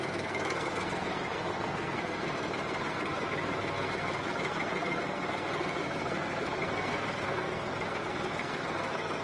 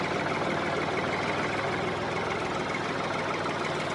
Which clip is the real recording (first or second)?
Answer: second